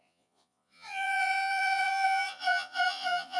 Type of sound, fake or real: fake